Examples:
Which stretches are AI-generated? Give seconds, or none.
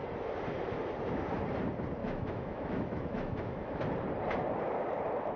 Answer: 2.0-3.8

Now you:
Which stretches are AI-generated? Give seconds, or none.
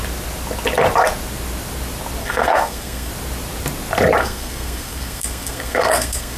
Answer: 2.2-3.1; 4.2-6.4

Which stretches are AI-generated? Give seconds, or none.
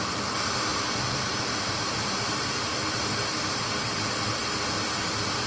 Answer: 0.7-2.3